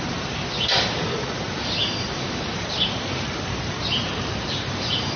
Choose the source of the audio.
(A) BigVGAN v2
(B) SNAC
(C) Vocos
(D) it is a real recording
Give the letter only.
A